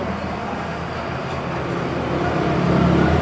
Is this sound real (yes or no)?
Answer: yes